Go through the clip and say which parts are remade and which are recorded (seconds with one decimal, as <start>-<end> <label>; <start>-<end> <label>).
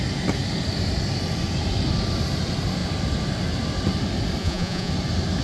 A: 0.0-4.4 recorded; 4.4-4.9 remade; 4.9-5.4 recorded